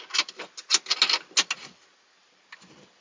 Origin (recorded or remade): recorded